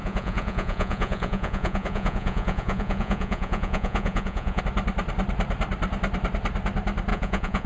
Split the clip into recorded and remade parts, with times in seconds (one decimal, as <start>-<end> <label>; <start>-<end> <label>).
0.0-4.6 remade; 4.6-7.1 recorded; 7.1-7.7 remade